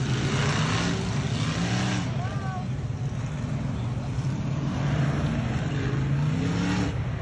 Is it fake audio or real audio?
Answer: real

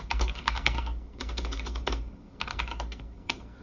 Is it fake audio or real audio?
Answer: fake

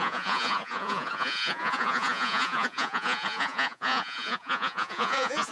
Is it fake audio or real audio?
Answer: fake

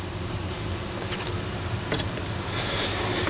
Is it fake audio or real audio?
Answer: fake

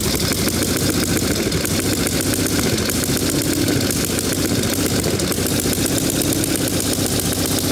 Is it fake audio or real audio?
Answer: real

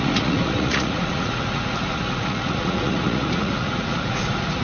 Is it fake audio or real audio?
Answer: fake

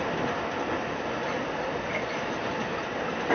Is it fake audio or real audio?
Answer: real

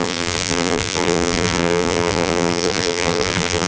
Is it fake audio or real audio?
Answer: fake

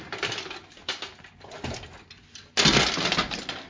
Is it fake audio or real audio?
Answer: real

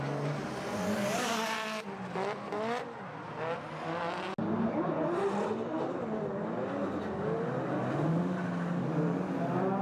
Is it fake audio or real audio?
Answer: real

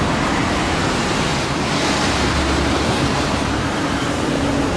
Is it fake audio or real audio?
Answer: fake